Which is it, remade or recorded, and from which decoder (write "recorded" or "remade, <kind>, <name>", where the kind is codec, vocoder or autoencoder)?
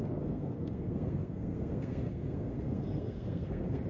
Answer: remade, codec, SNAC